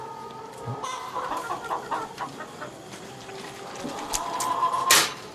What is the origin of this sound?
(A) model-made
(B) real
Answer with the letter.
B